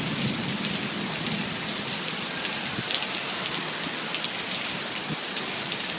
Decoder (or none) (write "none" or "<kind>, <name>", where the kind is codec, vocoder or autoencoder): none